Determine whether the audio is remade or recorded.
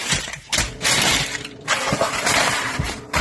remade